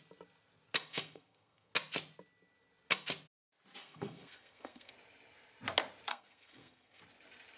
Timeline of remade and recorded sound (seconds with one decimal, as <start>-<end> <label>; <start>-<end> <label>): 0.0-0.9 recorded; 0.9-1.7 remade; 1.7-3.8 recorded; 3.8-4.9 remade; 4.9-6.1 recorded; 6.1-7.0 remade; 7.0-7.6 recorded